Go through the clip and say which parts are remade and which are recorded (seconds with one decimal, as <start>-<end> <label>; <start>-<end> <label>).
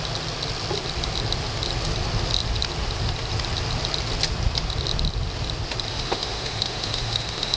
0.0-5.9 recorded; 5.9-7.6 remade